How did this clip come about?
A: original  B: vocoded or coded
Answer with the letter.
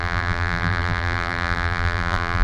B